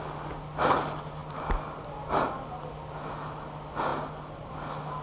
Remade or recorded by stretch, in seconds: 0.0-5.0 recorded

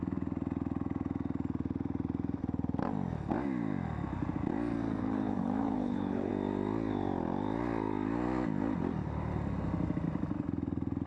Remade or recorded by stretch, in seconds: 0.0-5.0 recorded; 5.0-6.3 remade; 6.3-11.1 recorded

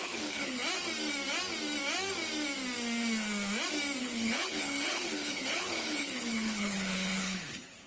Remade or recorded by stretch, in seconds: 0.0-0.6 remade; 0.6-4.0 recorded; 4.0-7.9 remade